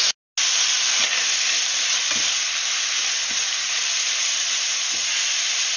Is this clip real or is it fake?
real